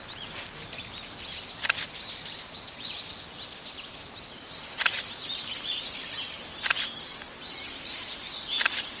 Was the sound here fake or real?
real